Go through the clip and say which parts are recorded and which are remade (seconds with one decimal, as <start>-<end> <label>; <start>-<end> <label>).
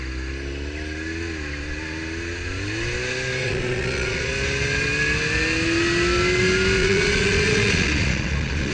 0.0-3.4 recorded; 3.4-4.3 remade; 4.3-6.8 recorded; 6.8-8.7 remade